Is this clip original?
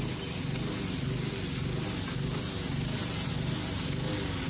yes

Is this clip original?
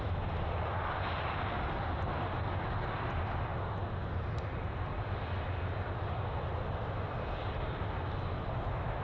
yes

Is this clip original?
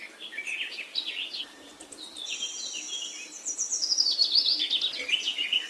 yes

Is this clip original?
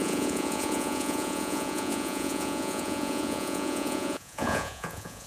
no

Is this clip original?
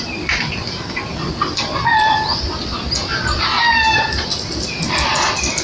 yes